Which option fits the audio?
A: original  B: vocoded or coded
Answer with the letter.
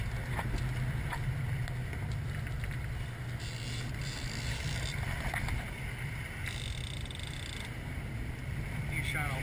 A